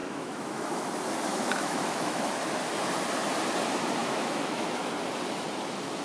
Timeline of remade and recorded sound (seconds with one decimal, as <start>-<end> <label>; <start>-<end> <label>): 0.0-0.9 remade; 0.9-1.3 recorded; 1.3-2.3 remade; 2.3-4.0 recorded; 4.0-4.9 remade; 4.9-6.0 recorded